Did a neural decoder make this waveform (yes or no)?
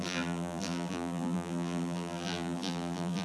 yes